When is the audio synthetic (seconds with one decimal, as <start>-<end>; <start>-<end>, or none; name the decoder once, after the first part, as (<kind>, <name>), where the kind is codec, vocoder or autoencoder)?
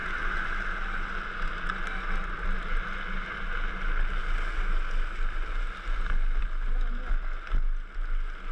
none